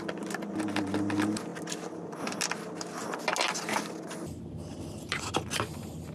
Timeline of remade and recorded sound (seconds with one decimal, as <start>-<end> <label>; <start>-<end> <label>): 0.0-6.1 recorded